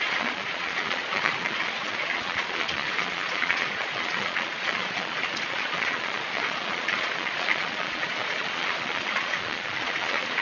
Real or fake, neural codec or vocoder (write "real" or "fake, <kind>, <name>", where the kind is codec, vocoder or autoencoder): fake, vocoder, Vocos